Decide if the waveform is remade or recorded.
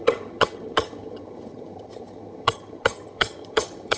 remade